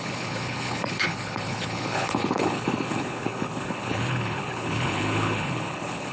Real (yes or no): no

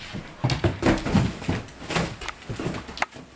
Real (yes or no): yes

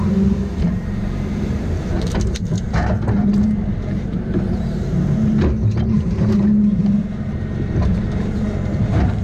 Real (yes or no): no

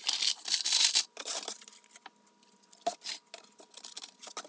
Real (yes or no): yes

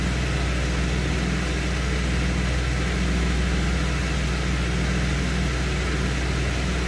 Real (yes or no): yes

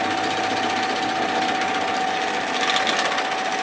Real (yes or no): yes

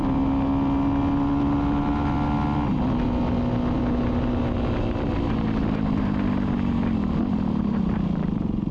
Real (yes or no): yes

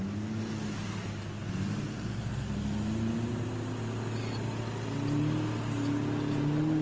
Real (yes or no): yes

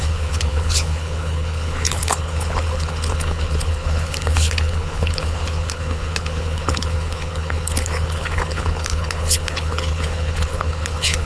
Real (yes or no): no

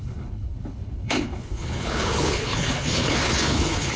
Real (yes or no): no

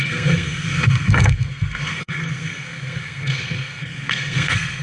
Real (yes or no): no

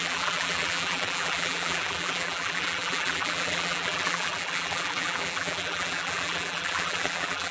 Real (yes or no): no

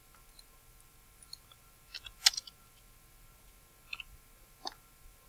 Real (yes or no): yes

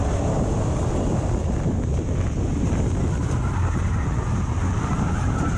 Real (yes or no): yes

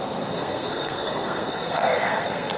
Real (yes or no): no